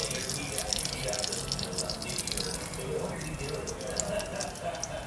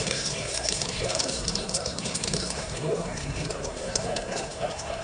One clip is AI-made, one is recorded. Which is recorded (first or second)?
first